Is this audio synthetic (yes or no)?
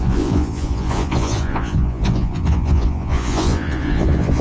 yes